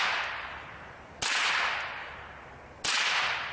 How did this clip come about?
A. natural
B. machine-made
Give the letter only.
A